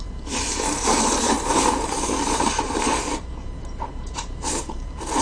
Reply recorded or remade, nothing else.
remade